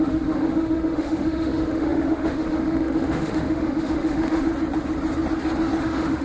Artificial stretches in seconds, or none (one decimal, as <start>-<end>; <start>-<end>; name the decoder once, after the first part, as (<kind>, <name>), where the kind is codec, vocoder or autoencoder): 0.0-4.5 (autoencoder, DAC-VAE); 5.8-6.2